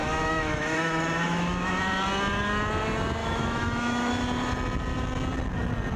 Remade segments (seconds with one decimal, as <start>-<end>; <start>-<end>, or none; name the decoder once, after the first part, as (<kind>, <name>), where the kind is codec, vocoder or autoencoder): 0.0-1.8 (autoencoder, DAC-VAE); 3.2-4.1